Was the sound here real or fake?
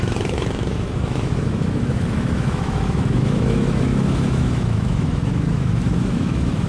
fake